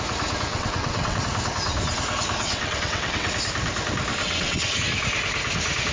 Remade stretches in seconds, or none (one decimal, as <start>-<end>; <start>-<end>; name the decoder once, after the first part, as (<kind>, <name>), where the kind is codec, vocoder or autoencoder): 0.5-1.2 (vocoder, WaveNeXt); 2.4-3.3; 4.2-4.8